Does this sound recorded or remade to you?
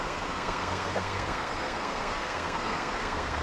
remade